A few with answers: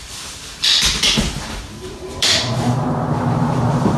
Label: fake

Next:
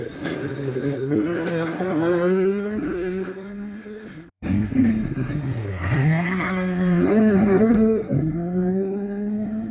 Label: fake